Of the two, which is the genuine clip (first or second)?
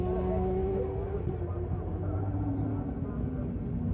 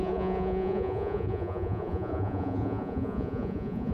first